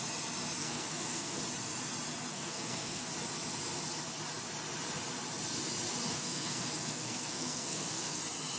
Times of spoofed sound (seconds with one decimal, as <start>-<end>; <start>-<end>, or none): 0.6-1.4; 2.3-3.1; 6.1-8.2